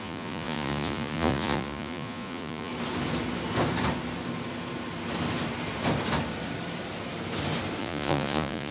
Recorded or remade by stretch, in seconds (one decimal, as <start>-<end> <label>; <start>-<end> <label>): 0.0-2.7 remade; 2.7-7.8 recorded; 7.8-8.7 remade